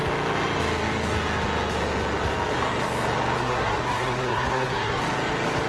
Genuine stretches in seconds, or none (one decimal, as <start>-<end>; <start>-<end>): 0.0-3.4; 5.0-5.7